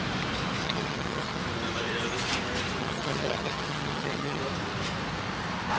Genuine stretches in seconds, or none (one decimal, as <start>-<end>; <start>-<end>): 0.0-0.6; 1.4-2.8; 4.4-5.8

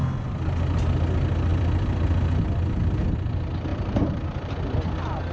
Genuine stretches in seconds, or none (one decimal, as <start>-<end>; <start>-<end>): 0.0-1.5; 2.4-3.7; 4.8-5.3